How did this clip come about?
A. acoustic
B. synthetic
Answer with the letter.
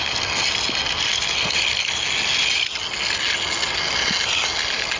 A